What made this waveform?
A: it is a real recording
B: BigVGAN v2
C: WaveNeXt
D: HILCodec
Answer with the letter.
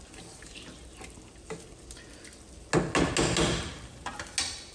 A